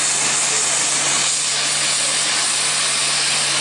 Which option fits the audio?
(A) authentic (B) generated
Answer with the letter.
A